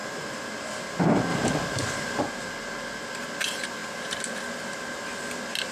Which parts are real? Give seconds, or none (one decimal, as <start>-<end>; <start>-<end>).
0.6-1.3; 2.2-3.8; 5.1-5.7